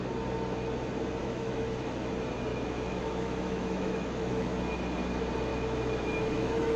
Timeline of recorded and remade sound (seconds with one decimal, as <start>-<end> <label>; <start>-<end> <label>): 0.0-1.2 recorded; 1.2-2.1 remade; 2.1-2.5 recorded; 2.5-4.6 remade; 4.6-5.5 recorded; 5.5-6.8 remade